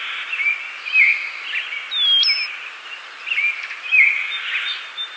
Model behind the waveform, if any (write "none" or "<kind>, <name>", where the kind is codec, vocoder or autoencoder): none